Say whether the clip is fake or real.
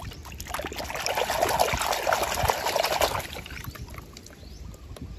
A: real